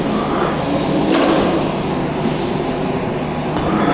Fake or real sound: real